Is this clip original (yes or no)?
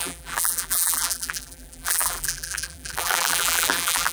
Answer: no